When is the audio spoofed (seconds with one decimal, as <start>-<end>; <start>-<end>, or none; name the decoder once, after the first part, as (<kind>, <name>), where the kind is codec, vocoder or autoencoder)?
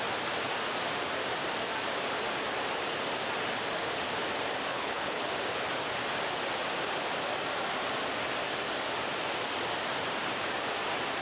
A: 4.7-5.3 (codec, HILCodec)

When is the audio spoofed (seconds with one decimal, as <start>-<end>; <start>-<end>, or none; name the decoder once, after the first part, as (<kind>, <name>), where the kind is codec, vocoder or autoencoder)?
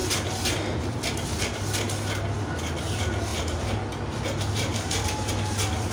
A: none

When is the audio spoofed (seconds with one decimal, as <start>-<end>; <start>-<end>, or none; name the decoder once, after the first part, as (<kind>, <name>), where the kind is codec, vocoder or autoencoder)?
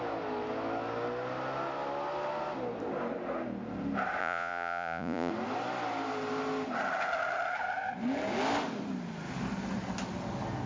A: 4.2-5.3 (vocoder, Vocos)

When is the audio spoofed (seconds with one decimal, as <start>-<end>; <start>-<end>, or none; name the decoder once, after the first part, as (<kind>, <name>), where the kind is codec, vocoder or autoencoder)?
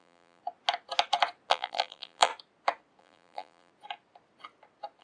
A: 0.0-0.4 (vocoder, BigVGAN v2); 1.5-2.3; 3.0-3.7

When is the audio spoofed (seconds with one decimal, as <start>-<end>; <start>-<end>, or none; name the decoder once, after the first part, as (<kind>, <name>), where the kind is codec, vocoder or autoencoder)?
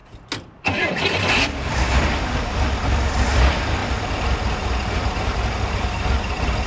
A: none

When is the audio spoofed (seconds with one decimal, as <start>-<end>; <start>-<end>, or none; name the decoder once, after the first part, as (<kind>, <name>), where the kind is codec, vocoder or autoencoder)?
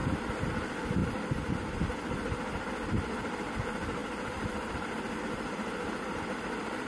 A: 0.0-0.5 (vocoder, BigVGAN v2); 1.0-1.8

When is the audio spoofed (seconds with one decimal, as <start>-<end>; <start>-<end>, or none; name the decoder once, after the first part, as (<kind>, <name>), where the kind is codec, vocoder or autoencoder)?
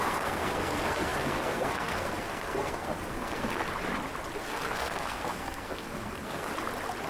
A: 0.0-3.6 (codec, SNAC); 4.4-6.5